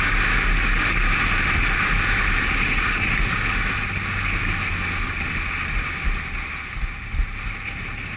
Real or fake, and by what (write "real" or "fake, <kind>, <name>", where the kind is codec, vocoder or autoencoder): real